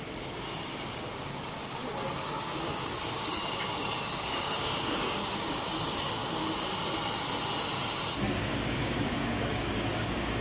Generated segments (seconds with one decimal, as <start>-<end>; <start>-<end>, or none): 0.0-3.4; 4.0-6.4; 8.4-10.4